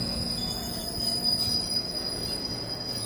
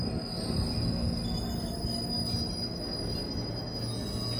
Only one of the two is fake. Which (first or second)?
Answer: first